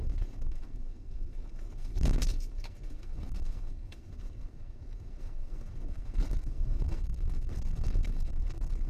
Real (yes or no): no